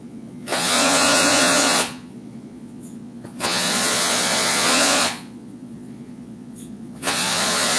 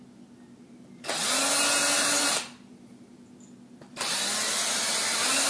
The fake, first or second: first